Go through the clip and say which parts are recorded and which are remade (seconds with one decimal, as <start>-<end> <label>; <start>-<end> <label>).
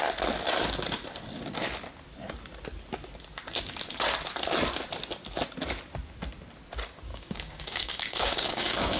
0.0-7.1 recorded; 7.1-9.0 remade